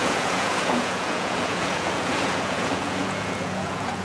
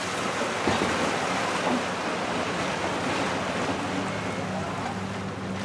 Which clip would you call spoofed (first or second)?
first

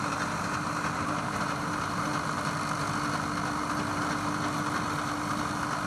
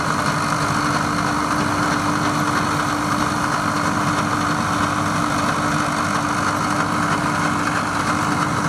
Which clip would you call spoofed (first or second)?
first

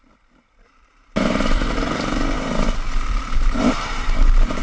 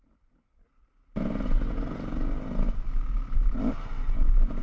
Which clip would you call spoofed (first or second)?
first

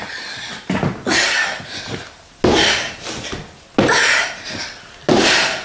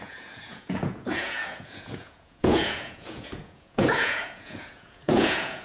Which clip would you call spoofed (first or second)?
second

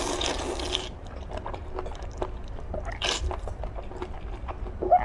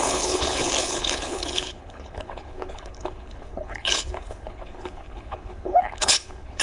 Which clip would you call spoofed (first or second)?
second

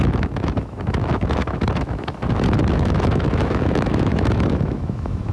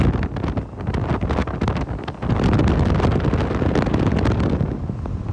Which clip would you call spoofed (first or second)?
first